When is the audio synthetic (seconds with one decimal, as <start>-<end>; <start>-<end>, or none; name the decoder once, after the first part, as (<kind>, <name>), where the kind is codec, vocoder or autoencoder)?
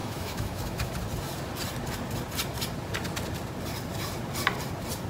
0.0-0.9 (autoencoder, DAC-VAE)